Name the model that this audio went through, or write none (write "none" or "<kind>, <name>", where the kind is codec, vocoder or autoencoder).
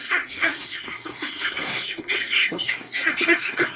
codec, SNAC